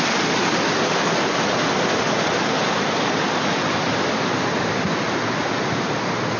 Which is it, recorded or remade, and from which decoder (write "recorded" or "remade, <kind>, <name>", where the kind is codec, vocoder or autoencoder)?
recorded